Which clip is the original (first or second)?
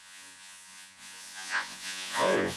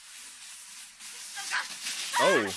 second